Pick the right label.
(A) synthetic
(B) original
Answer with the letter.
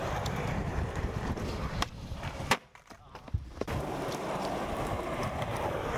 A